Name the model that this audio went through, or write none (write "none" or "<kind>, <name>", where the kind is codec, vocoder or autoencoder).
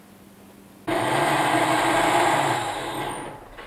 none